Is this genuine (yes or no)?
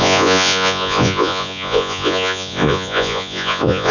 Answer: no